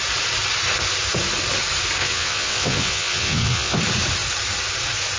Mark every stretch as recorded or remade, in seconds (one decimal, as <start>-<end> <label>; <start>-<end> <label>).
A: 0.0-2.0 recorded; 2.0-3.8 remade; 3.8-5.2 recorded

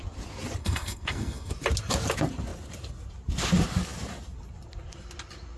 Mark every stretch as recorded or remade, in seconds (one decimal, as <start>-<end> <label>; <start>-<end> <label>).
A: 0.0-0.6 recorded; 0.6-1.5 remade; 1.5-5.6 recorded

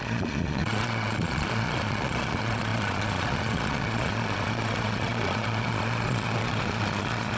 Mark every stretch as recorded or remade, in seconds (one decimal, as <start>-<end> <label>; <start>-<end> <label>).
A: 0.0-7.4 remade

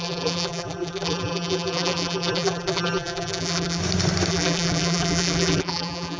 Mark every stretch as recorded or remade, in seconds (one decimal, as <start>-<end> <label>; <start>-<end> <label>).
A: 0.0-3.8 remade; 3.8-4.3 recorded; 4.3-6.2 remade

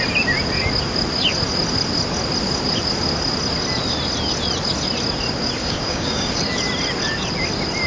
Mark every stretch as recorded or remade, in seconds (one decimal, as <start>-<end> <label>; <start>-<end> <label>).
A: 0.0-5.6 recorded; 5.6-6.4 remade; 6.4-7.9 recorded

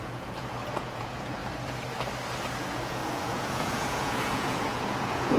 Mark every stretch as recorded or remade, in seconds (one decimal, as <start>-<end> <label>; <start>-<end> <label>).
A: 0.0-1.4 remade; 1.4-2.6 recorded; 2.6-5.4 remade

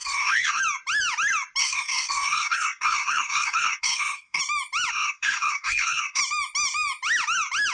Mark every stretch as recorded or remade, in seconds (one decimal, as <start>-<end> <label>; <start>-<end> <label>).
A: 0.0-0.6 remade; 0.6-1.6 recorded; 1.6-4.4 remade; 4.4-4.9 recorded; 4.9-6.2 remade; 6.2-7.7 recorded

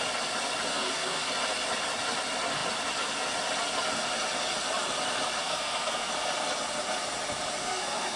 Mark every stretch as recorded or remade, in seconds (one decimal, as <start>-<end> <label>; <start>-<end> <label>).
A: 0.0-0.7 recorded; 0.7-1.3 remade; 1.3-5.4 recorded; 5.4-6.1 remade; 6.1-7.6 recorded; 7.6-8.2 remade